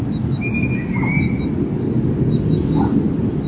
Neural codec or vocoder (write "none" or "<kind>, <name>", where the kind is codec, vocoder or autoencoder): none